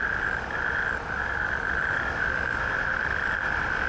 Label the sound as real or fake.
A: real